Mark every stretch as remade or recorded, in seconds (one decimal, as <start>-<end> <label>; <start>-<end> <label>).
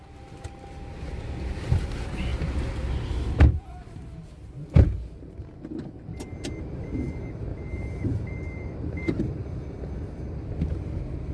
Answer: 0.0-7.5 recorded; 7.5-9.2 remade; 9.2-11.3 recorded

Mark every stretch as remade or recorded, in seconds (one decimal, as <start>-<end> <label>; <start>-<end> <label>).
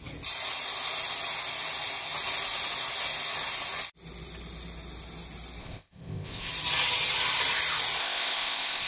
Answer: 0.0-5.6 recorded; 5.6-6.5 remade; 6.5-8.0 recorded; 8.0-8.9 remade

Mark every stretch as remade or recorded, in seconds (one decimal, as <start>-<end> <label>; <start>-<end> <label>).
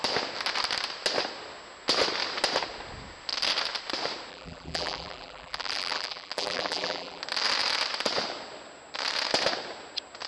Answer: 0.0-4.3 recorded; 4.3-7.2 remade; 7.2-10.3 recorded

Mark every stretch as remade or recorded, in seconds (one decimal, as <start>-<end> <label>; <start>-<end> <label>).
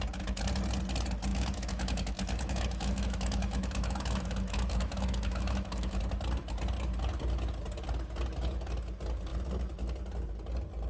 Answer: 0.0-1.3 recorded; 1.3-6.0 remade; 6.0-10.9 recorded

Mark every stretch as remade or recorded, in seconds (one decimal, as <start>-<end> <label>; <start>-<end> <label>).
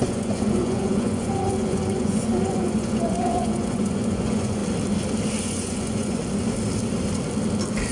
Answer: 0.0-4.6 remade; 4.6-5.4 recorded; 5.4-6.2 remade; 6.2-7.9 recorded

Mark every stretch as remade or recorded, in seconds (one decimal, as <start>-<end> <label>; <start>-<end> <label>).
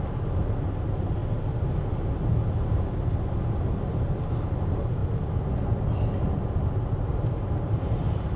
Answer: 0.0-7.1 recorded; 7.1-8.4 remade